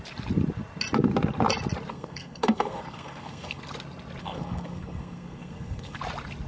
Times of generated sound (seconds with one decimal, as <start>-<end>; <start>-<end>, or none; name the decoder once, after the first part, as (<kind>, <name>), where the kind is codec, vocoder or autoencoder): 1.9-3.6 (codec, SNAC); 4.2-6.0

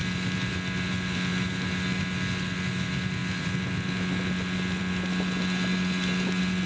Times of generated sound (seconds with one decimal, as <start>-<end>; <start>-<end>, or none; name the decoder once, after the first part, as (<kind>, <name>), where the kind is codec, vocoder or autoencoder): none